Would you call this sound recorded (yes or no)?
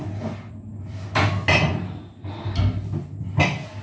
yes